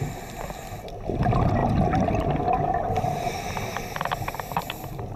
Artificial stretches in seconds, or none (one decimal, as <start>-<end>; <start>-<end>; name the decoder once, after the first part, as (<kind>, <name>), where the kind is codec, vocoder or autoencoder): none

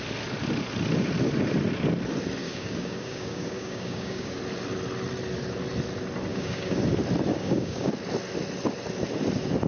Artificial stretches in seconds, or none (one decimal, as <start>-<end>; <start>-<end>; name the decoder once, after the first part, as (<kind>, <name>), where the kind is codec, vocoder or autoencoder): 2.4-4.4 (codec, DAC); 6.3-6.8; 7.3-7.9

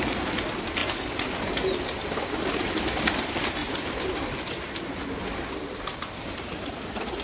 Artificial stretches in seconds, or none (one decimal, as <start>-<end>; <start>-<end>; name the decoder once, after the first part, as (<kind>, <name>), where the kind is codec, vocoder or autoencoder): none

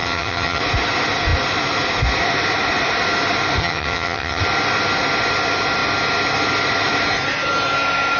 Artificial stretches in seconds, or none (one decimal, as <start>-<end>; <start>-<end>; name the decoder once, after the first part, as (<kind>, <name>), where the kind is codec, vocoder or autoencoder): 0.0-0.6 (vocoder, HiFi-GAN); 3.6-4.4

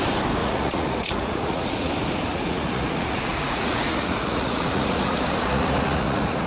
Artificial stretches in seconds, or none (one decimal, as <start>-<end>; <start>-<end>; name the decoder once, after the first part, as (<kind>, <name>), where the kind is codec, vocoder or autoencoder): 0.4-1.9 (vocoder, Vocos); 2.3-6.5